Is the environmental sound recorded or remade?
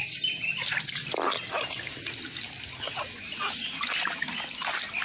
recorded